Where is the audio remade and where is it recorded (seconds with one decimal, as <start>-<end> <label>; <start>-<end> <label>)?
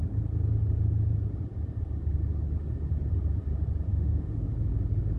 0.0-3.9 recorded; 3.9-4.5 remade; 4.5-5.2 recorded